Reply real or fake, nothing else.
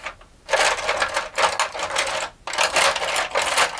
real